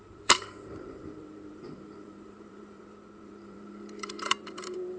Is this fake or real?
fake